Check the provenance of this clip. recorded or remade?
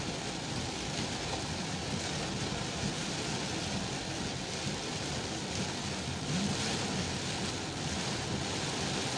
recorded